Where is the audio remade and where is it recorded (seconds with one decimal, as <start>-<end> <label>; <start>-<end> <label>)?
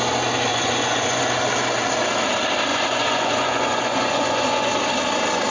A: 0.0-0.5 recorded; 0.5-1.2 remade; 1.2-2.7 recorded; 2.7-4.7 remade; 4.7-5.5 recorded